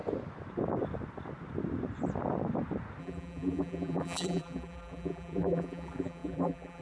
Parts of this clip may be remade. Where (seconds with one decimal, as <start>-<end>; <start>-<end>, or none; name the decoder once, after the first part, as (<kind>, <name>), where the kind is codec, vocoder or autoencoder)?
3.0-6.8 (vocoder, BigVGAN v2)